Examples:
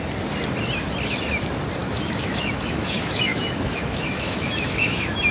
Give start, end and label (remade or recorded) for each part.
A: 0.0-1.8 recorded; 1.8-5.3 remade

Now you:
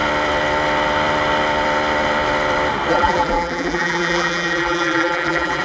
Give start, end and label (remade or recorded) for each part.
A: 0.0-2.9 recorded; 2.9-5.6 remade

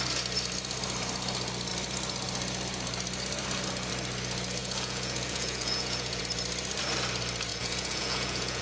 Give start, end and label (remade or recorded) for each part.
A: 0.0-4.6 recorded; 4.6-6.2 remade; 6.2-7.5 recorded; 7.5-8.6 remade

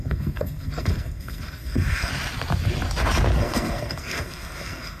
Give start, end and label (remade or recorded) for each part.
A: 0.0-2.1 remade; 2.1-3.4 recorded; 3.4-5.0 remade

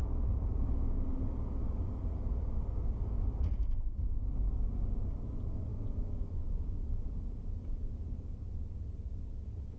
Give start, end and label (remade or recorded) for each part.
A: 0.0-1.0 remade; 1.0-5.7 recorded; 5.7-8.3 remade; 8.3-9.8 recorded

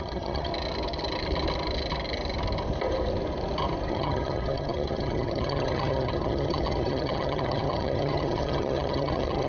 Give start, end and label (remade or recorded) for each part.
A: 0.0-0.5 remade; 0.5-3.9 recorded; 3.9-9.5 remade

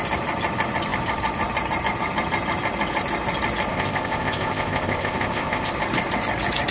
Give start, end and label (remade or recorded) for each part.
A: 0.0-3.7 recorded; 3.7-5.7 remade; 5.7-6.7 recorded